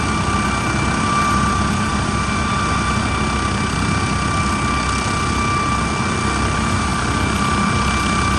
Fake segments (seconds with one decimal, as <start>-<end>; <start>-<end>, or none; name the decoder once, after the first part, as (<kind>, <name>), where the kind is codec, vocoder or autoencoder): none